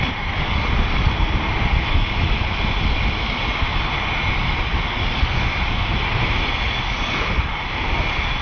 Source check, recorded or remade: recorded